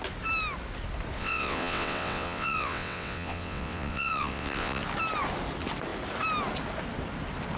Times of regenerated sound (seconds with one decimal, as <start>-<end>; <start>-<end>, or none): 1.2-4.8